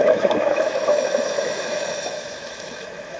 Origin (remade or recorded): remade